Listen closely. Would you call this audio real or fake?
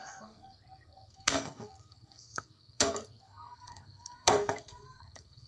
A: fake